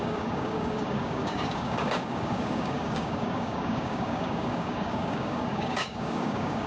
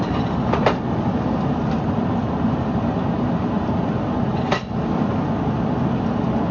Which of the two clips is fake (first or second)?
first